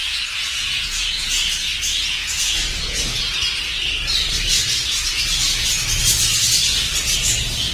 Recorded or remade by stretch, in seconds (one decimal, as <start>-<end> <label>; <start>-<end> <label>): 0.0-3.2 remade; 3.2-7.7 recorded